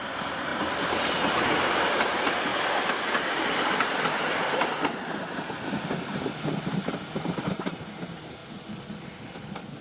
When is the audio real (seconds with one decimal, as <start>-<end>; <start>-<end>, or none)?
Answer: 2.5-6.7; 8.4-9.3